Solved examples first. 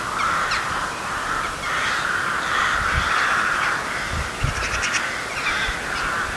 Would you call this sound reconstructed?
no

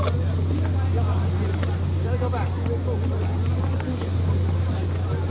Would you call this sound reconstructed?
no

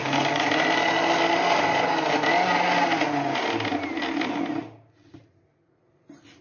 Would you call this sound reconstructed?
no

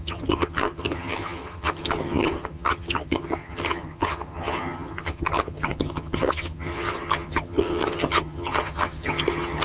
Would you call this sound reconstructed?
yes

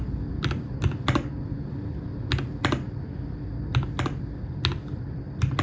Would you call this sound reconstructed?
no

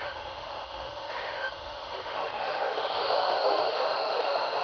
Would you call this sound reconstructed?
yes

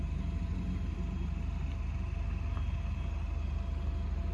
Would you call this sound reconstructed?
no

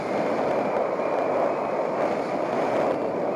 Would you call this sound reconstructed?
no